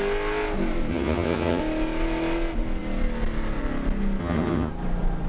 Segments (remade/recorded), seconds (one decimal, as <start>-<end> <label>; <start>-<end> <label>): 0.0-0.9 recorded; 0.9-1.6 remade; 1.6-4.2 recorded; 4.2-4.7 remade; 4.7-5.3 recorded